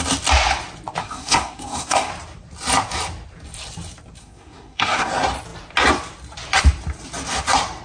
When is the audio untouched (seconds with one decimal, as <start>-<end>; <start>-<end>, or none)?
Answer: 0.0-1.0; 2.1-4.2; 5.1-7.8